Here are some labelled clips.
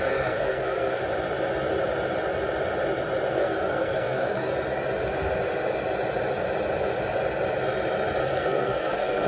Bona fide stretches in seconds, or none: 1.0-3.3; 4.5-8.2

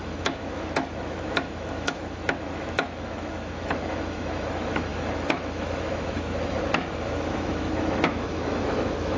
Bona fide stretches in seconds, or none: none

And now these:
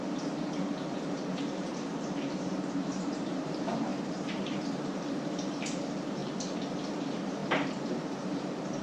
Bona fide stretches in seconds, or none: 6.2-6.9

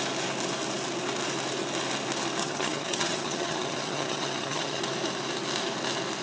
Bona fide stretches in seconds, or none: 0.0-2.4; 4.8-6.2